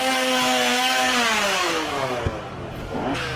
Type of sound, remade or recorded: remade